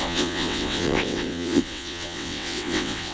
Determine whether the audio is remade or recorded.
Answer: remade